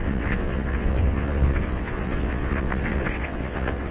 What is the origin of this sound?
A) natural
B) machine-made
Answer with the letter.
B